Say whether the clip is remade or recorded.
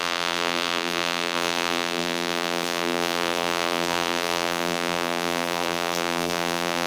remade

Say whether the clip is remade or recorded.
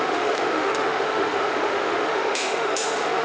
remade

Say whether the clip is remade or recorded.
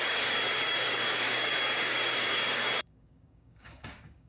remade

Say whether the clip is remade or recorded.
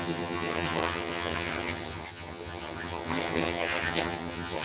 remade